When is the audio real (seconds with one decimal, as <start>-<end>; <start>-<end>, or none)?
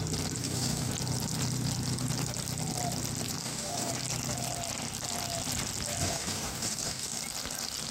0.0-0.4; 0.9-3.4; 3.9-6.0; 7.2-7.9